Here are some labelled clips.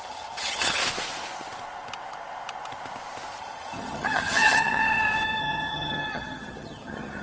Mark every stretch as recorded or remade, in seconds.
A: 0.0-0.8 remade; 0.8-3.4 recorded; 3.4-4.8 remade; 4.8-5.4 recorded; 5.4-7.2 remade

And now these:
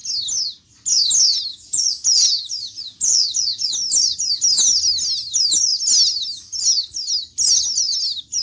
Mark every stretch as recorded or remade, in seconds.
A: 0.0-1.5 recorded; 1.5-3.7 remade; 3.7-8.4 recorded

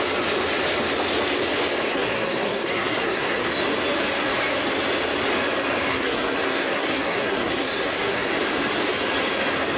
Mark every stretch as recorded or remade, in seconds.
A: 0.0-1.9 recorded; 1.9-3.5 remade; 3.5-5.9 recorded; 5.9-8.3 remade; 8.3-9.8 recorded